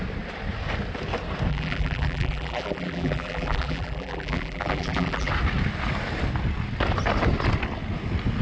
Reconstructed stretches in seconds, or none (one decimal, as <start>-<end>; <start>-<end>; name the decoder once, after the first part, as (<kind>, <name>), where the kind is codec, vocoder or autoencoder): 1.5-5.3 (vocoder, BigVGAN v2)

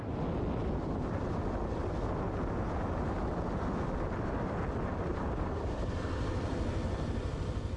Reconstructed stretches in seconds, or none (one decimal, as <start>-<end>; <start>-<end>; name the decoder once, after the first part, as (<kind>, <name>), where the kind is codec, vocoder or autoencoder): 5.1-5.8 (vocoder, BigVGAN v2)

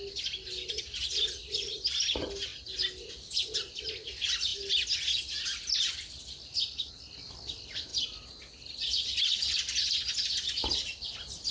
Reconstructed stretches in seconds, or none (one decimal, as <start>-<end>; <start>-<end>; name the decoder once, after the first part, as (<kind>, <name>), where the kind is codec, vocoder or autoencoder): none

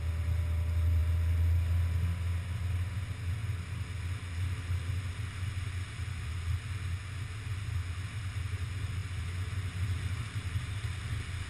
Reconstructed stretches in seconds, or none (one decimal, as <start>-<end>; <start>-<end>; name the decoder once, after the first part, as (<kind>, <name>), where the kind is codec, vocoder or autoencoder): none

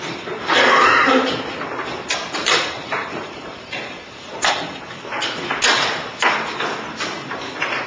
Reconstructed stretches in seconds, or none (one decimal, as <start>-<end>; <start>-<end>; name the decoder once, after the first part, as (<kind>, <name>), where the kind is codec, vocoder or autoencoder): 2.4-5.0 (vocoder, BigVGAN v2)

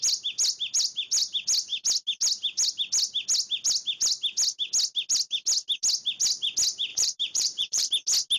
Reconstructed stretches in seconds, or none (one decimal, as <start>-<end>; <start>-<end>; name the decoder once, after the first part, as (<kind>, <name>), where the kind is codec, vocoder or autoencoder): 6.9-7.9 (vocoder, BigVGAN v2)

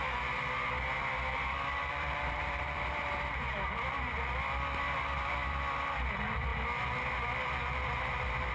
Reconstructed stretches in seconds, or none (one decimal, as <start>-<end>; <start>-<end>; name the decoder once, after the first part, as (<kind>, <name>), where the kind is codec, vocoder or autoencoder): 1.3-4.4 (vocoder, BigVGAN v2)

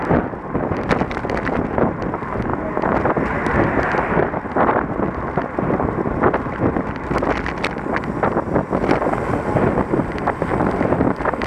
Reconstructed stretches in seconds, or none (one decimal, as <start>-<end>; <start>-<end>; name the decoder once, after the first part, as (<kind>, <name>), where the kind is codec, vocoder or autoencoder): none